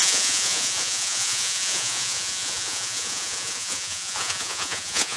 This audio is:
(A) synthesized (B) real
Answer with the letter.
A